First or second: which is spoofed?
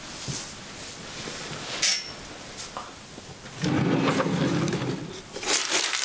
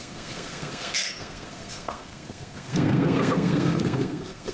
second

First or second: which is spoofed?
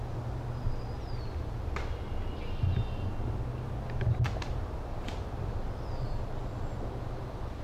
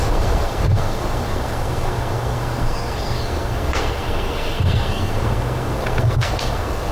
second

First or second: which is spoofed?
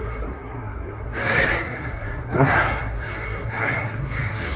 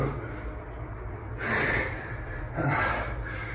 first